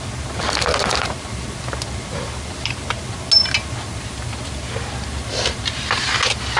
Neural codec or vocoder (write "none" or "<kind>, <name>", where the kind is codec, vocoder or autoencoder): none